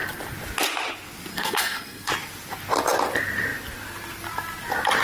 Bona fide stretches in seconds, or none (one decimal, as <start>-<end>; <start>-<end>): 0.0-1.3; 2.1-5.0